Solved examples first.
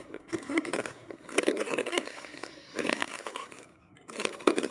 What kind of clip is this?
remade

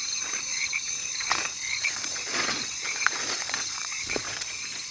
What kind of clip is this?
remade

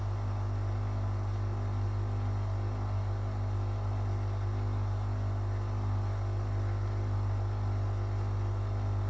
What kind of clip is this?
recorded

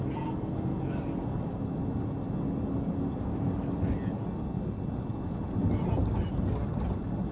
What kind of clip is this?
recorded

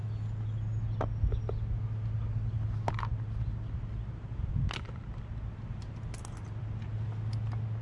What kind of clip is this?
recorded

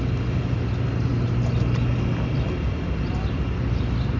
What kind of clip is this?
recorded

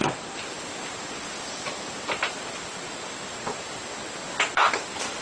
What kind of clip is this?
recorded